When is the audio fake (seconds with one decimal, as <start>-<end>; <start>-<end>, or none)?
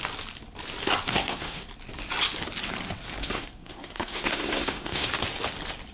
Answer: 1.1-1.6; 3.2-5.1